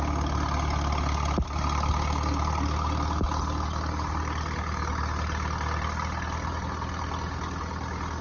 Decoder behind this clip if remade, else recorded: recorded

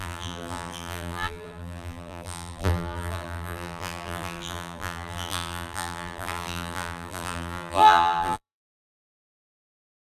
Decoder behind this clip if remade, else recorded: remade, vocoder, BigVGAN v2